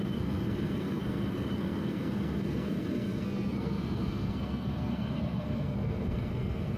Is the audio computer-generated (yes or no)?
yes